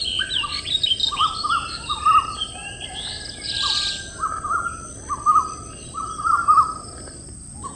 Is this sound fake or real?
real